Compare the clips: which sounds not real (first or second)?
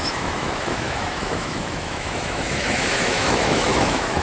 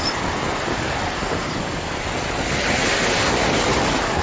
first